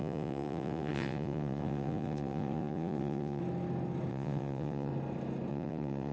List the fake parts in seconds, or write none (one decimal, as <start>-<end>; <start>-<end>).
0.0-3.4; 4.1-4.9; 5.5-6.1